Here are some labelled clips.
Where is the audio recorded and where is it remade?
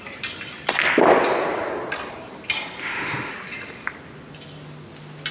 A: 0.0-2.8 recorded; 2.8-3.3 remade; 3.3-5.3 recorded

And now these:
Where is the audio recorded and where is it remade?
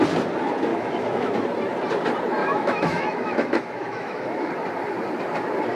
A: 0.0-0.7 recorded; 0.7-1.3 remade; 1.3-2.4 recorded; 2.4-4.5 remade; 4.5-5.8 recorded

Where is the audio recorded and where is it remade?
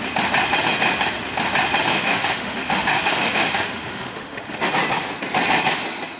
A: 0.0-1.9 recorded; 1.9-4.7 remade; 4.7-6.2 recorded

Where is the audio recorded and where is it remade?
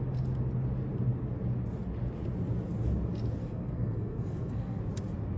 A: 0.0-3.4 recorded; 3.4-4.8 remade; 4.8-5.4 recorded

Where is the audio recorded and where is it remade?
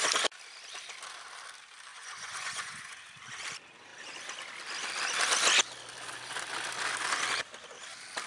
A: 0.0-1.9 recorded; 1.9-3.1 remade; 3.1-8.3 recorded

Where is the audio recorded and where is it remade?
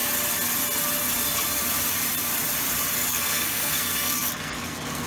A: 0.0-3.1 recorded; 3.1-5.1 remade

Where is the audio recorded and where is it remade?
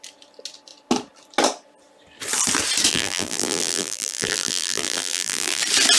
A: 0.0-2.9 recorded; 2.9-5.6 remade; 5.6-6.0 recorded